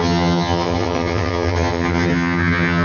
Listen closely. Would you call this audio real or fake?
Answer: fake